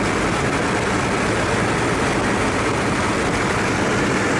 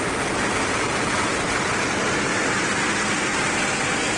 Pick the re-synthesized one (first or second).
second